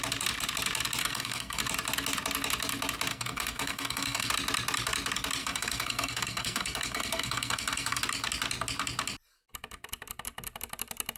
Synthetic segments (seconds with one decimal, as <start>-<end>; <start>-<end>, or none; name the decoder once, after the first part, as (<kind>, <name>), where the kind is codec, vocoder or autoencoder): 1.0-1.6 (codec, SNAC); 3.1-4.3; 5.4-8.0